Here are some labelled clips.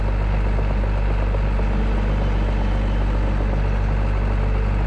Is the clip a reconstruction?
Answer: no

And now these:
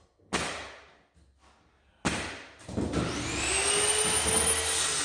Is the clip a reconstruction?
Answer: no